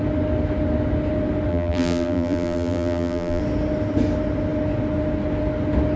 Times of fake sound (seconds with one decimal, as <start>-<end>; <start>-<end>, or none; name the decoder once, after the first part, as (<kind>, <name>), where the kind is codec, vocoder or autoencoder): 1.5-3.4 (vocoder, BigVGAN v2)